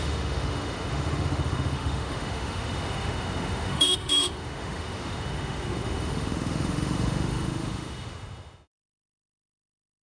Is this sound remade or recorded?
remade